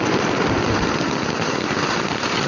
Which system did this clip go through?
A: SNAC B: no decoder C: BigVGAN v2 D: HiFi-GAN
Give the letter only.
B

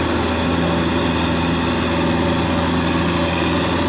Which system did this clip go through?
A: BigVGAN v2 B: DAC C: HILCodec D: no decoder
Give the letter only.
D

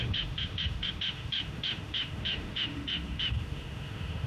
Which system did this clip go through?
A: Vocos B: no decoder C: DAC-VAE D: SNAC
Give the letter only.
C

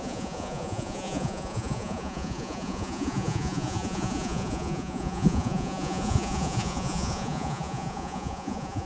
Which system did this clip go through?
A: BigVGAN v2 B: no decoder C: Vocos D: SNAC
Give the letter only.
C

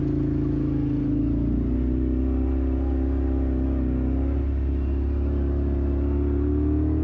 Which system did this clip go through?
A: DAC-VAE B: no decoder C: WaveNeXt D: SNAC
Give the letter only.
B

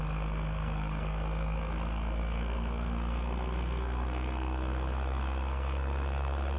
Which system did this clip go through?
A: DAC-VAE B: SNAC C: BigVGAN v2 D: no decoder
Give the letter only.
B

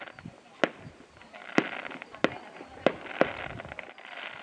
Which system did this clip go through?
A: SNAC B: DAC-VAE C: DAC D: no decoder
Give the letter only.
D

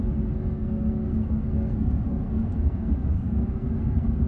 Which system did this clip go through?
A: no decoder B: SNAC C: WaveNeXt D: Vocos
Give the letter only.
B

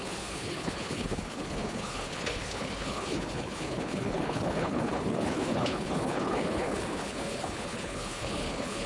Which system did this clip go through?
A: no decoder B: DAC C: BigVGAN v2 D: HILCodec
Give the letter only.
D